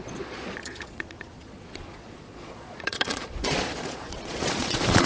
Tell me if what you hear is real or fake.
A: fake